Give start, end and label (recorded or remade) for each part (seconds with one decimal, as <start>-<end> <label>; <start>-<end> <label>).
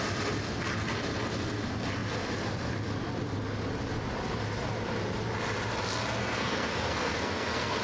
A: 0.0-6.2 recorded; 6.2-7.8 remade